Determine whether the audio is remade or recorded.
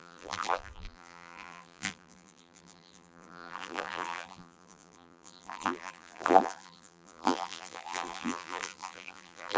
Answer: remade